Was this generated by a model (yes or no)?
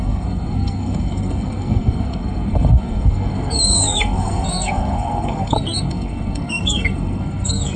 yes